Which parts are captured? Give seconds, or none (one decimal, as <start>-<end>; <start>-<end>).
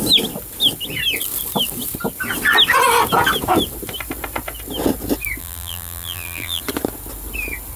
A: 0.0-5.4; 6.6-7.8